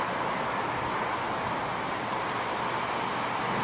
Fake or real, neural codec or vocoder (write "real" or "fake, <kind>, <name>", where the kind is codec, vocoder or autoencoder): real